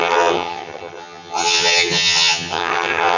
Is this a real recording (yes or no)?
no